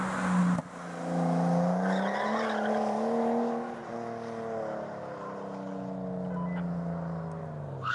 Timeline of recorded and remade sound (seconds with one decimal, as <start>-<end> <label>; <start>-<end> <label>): 0.0-7.9 recorded